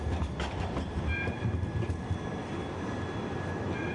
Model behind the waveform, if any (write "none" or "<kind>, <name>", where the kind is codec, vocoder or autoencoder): none